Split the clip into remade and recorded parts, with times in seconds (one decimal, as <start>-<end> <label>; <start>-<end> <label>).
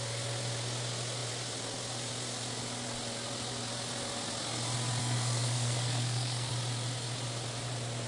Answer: 0.0-5.0 recorded; 5.0-6.5 remade; 6.5-8.1 recorded